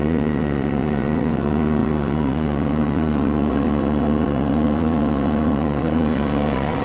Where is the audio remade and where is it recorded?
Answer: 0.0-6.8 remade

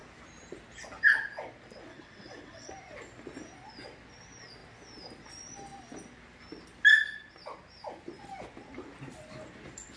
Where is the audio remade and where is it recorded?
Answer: 0.0-1.9 recorded; 1.9-2.7 remade; 2.7-10.0 recorded

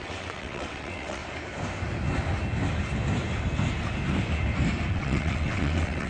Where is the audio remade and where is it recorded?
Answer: 0.0-1.2 remade; 1.2-4.9 recorded; 4.9-6.1 remade

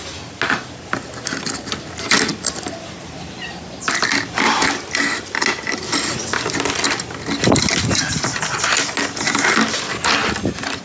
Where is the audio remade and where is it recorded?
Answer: 0.0-10.8 recorded

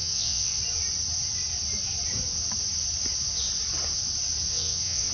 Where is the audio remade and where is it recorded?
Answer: 0.0-0.6 remade; 0.6-4.5 recorded; 4.5-5.1 remade

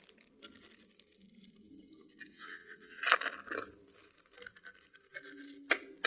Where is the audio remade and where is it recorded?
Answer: 0.0-2.3 recorded; 2.3-3.0 remade; 3.0-6.1 recorded